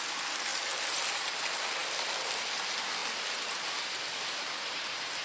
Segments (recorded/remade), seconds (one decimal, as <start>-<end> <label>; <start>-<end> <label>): 0.0-5.2 recorded